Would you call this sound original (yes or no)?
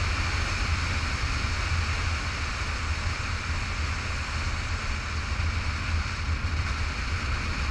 yes